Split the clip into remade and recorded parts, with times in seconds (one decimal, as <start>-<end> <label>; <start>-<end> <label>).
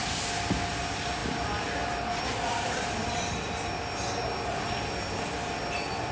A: 0.0-1.2 recorded; 1.2-2.7 remade; 2.7-6.1 recorded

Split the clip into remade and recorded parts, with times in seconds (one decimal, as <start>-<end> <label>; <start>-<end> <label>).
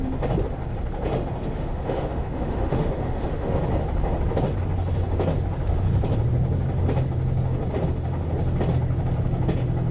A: 0.0-1.4 recorded; 1.4-3.6 remade; 3.6-9.9 recorded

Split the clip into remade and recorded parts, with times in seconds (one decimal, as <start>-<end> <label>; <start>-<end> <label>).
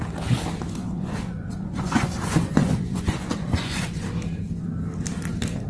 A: 0.0-0.8 recorded; 0.8-4.0 remade; 4.0-5.7 recorded